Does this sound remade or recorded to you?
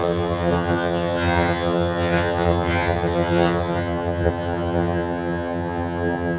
remade